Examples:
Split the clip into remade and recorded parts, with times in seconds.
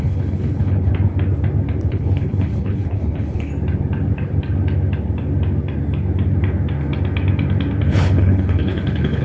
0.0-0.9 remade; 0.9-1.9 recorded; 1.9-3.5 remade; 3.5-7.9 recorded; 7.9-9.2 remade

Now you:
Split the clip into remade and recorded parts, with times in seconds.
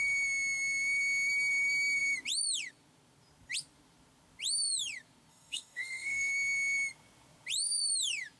0.0-5.3 recorded; 5.3-6.3 remade; 6.3-8.4 recorded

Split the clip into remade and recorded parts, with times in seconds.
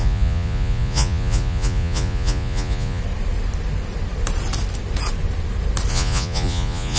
0.0-3.0 remade; 3.0-5.9 recorded; 5.9-7.0 remade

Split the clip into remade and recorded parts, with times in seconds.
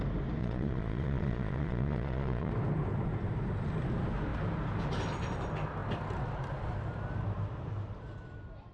0.0-0.4 recorded; 0.4-2.5 remade; 2.5-8.7 recorded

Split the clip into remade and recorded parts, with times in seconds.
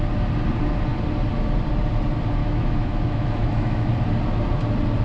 0.0-2.4 recorded; 2.4-3.9 remade; 3.9-5.0 recorded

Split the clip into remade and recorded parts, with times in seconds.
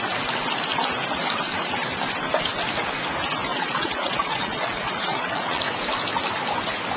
0.0-3.5 recorded; 3.5-5.6 remade; 5.6-7.0 recorded